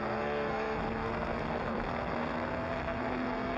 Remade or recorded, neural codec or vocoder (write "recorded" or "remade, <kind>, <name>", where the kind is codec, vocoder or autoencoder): remade, codec, SNAC